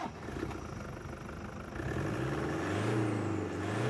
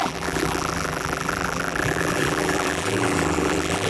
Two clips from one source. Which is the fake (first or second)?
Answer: second